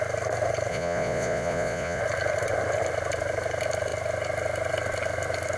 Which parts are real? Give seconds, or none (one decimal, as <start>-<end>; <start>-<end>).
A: 0.0-0.7; 2.0-5.6